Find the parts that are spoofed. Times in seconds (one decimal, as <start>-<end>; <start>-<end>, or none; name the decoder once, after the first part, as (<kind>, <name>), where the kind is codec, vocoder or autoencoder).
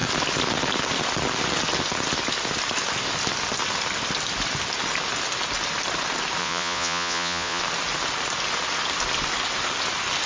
6.4-7.6 (vocoder, Vocos)